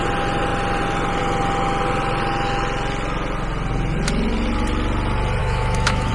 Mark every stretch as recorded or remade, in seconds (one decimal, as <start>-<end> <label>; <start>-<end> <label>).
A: 0.0-5.4 recorded; 5.4-6.1 remade